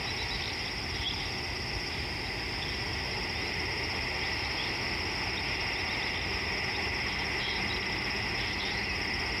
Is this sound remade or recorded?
recorded